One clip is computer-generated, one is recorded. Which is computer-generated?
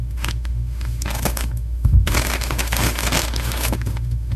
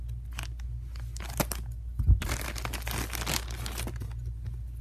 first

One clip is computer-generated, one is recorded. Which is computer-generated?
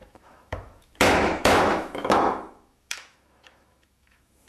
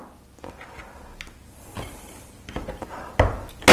first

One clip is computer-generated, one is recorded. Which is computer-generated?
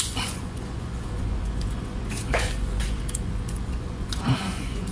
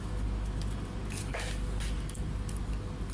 first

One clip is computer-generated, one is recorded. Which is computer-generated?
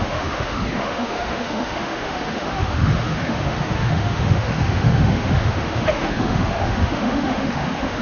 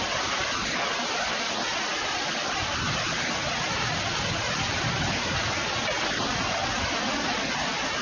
first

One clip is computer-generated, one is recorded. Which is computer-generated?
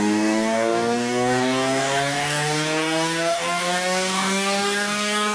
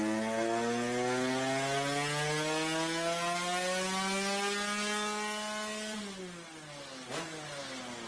first